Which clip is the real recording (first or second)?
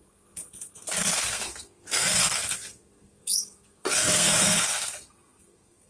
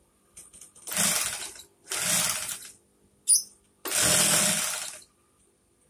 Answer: second